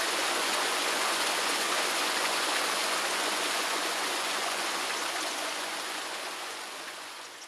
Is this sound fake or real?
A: fake